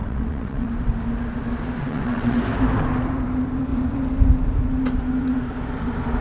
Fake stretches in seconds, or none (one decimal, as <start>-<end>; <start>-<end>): 0.0-0.7; 1.8-2.4